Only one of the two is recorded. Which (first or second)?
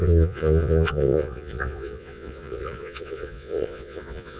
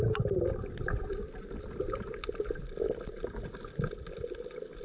second